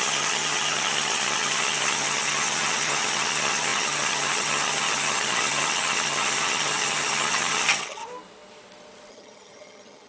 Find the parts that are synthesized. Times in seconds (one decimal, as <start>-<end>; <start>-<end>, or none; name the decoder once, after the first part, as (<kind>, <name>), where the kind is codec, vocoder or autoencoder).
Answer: 0.0-8.0 (vocoder, HiFi-GAN); 9.1-10.1